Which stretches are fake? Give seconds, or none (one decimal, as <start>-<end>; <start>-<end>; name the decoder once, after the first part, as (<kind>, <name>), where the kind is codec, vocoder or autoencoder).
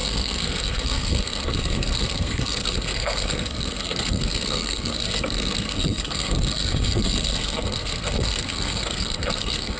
0.0-9.8 (codec, SNAC)